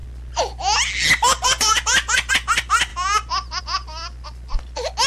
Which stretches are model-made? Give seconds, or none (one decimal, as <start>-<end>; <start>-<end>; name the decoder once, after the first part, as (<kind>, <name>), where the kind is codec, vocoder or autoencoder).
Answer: none